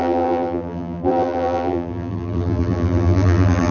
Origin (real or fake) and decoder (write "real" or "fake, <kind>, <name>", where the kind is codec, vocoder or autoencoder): fake, vocoder, BigVGAN v2